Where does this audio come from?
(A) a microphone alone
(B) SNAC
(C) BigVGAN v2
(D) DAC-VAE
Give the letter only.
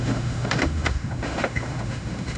D